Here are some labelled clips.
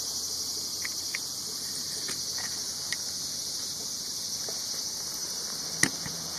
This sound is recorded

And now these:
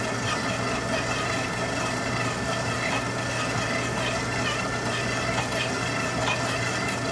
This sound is recorded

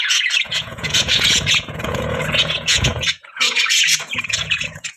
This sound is remade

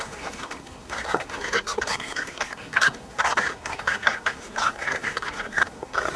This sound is remade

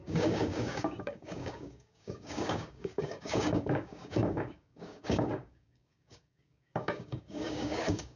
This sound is remade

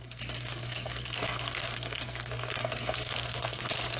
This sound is remade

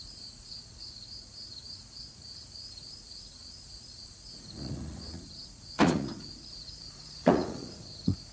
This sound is remade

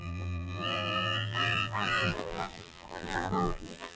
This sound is remade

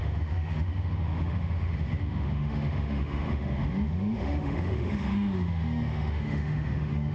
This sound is remade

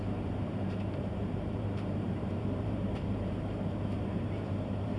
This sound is remade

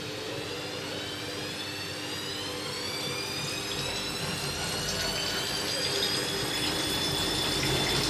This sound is recorded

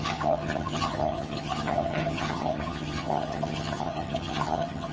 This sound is remade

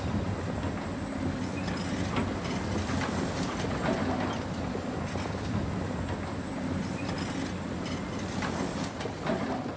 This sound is recorded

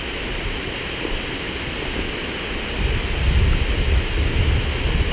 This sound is recorded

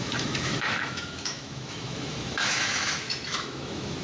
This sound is remade